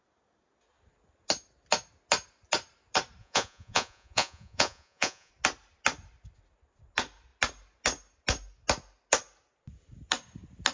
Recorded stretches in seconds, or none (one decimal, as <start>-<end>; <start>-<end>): 0.0-3.2; 5.3-10.7